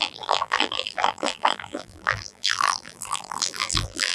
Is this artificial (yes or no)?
yes